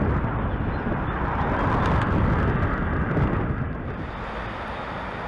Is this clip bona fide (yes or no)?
yes